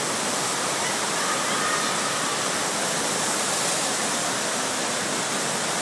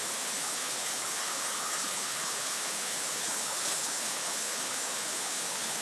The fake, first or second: second